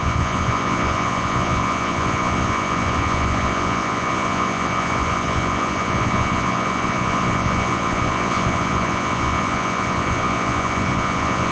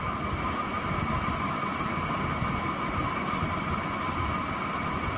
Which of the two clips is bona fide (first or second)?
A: second